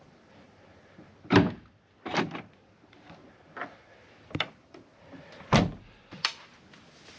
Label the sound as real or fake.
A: real